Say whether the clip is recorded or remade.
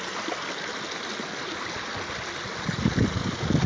recorded